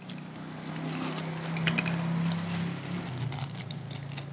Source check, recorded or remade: recorded